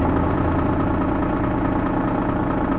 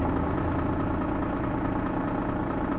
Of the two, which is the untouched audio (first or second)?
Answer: first